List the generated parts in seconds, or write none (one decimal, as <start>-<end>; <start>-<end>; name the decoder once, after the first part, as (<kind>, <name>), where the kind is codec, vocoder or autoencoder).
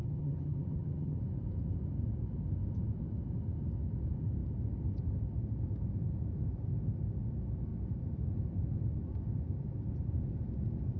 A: 0.0-1.2 (vocoder, HiFi-GAN)